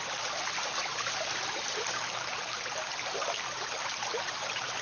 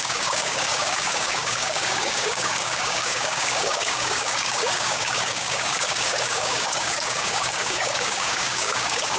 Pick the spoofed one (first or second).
second